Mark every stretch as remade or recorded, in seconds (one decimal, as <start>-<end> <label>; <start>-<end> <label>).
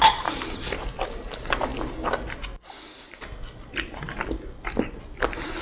0.0-1.7 remade; 1.7-3.0 recorded; 3.0-5.6 remade